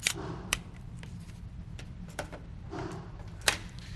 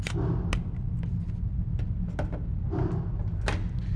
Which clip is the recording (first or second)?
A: second